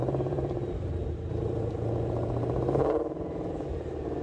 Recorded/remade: remade